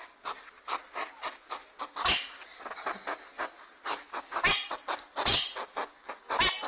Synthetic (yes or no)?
no